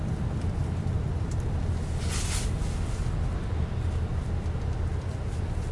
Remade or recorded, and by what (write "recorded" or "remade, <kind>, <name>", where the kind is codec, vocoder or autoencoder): recorded